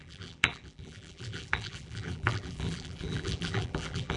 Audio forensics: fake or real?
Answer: fake